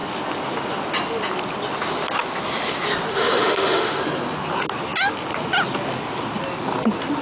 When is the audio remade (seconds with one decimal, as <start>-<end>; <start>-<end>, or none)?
3.1-4.0